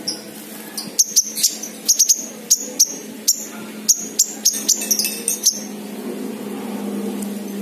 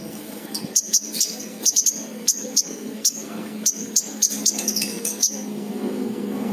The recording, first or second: first